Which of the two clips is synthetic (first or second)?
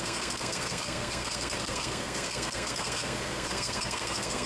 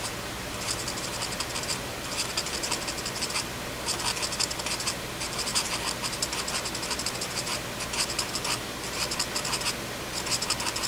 first